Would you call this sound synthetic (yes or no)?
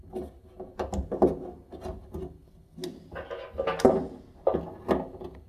no